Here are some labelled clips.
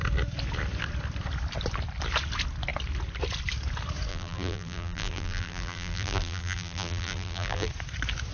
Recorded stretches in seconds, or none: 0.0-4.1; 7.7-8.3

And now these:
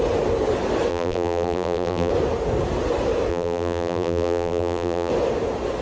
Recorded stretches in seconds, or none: 0.0-0.9; 2.1-3.3; 5.1-5.8

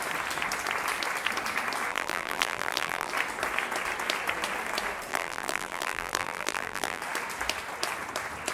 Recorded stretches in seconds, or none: 0.0-1.9; 3.1-5.1; 7.0-8.5

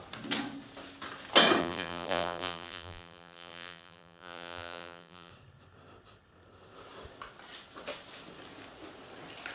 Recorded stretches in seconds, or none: 0.0-1.6; 5.3-9.5

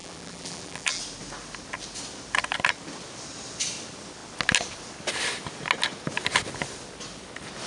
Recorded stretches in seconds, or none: 1.0-7.7

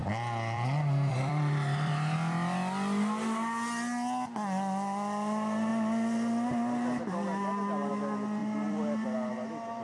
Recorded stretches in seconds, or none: 1.9-8.4; 9.3-9.8

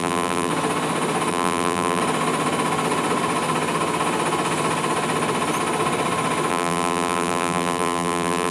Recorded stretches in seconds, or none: 0.5-1.3; 2.0-6.5

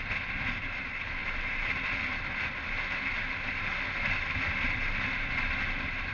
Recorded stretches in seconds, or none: 0.0-6.1